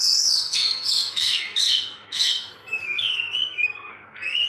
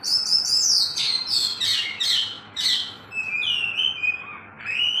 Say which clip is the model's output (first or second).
first